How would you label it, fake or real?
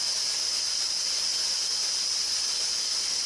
real